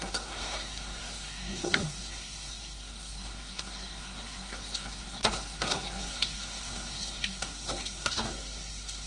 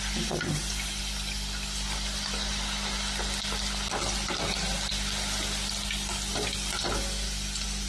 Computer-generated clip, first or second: first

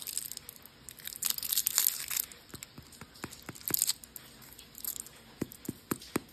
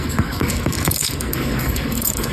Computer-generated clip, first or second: second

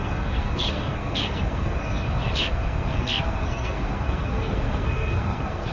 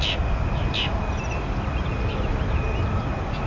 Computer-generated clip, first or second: first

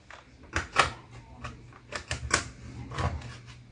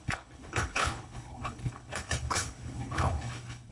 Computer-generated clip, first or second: second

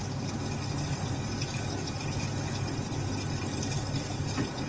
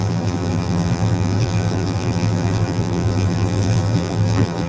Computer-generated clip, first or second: second